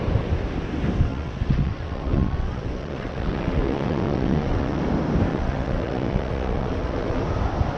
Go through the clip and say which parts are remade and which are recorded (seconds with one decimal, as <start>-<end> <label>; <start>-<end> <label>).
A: 0.0-1.1 recorded; 1.1-4.8 remade; 4.8-5.3 recorded; 5.3-7.2 remade; 7.2-7.8 recorded